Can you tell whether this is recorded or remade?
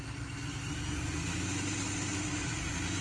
recorded